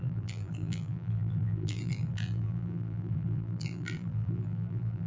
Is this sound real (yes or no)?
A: no